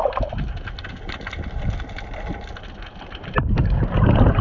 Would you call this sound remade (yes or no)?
no